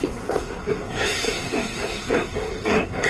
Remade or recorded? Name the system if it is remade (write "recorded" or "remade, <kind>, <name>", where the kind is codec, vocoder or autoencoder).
remade, codec, SNAC